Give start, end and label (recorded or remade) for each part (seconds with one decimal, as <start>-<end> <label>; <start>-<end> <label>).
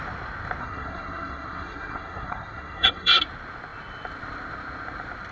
0.0-0.6 recorded; 0.6-3.2 remade; 3.2-5.3 recorded